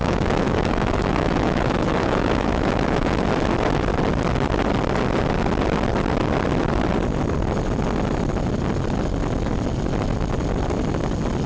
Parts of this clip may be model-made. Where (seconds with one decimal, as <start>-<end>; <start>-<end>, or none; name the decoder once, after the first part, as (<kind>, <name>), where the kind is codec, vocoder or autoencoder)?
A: 0.0-3.2 (autoencoder, DAC-VAE)